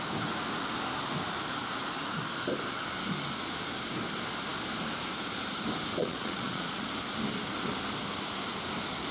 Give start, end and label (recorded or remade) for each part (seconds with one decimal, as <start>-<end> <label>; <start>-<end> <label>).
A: 0.0-6.0 recorded; 6.0-6.9 remade; 6.9-9.1 recorded